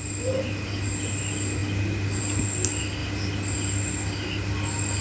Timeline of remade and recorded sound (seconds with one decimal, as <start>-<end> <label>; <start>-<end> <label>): 0.0-5.0 recorded